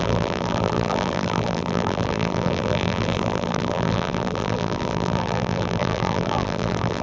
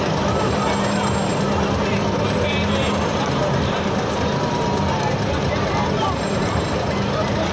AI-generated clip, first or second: first